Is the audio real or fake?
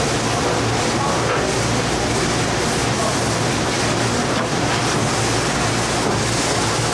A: real